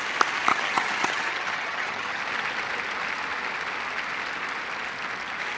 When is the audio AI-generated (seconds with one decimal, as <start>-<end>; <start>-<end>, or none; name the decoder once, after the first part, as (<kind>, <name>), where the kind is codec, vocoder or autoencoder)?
0.5-2.2 (vocoder, HiFi-GAN)